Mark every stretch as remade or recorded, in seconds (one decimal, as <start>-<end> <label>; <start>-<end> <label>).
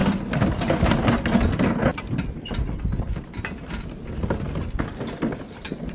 0.0-5.9 recorded